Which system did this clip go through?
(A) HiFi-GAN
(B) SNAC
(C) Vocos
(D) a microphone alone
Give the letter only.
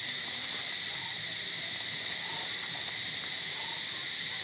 D